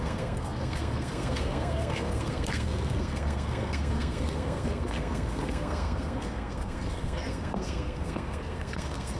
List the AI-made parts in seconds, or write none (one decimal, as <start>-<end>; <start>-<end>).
0.0-9.2